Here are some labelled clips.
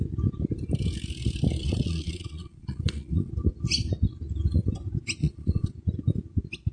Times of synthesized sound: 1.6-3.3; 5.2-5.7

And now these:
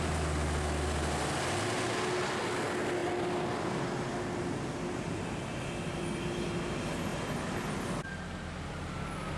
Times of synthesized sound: none

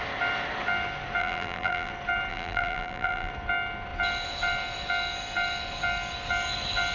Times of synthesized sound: 1.2-1.9; 2.3-3.3

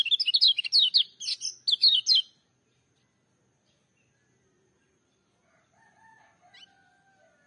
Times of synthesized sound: none

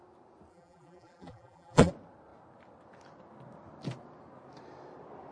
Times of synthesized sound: 0.5-1.9